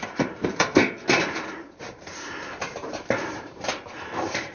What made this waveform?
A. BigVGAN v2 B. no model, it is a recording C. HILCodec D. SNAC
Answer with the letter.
A